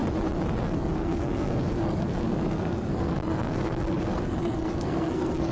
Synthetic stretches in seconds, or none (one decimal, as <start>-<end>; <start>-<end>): 0.6-5.5